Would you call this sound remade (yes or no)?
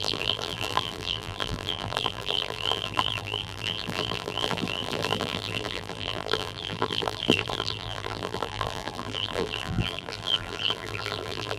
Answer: yes